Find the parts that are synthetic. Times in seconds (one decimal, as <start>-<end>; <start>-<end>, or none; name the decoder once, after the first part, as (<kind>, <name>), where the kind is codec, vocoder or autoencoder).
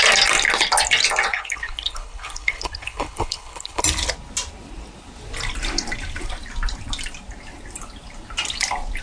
1.3-3.8 (codec, HILCodec)